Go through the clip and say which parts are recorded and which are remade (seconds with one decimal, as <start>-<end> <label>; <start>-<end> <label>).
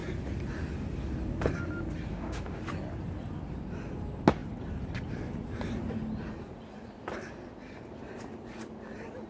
0.0-2.1 recorded; 2.1-2.6 remade; 2.6-9.3 recorded